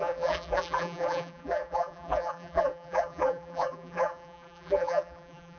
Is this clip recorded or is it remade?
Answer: remade